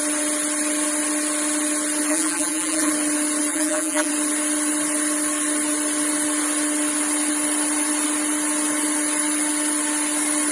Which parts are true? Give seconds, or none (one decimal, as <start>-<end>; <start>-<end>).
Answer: 0.0-2.1; 2.9-3.5; 4.1-10.5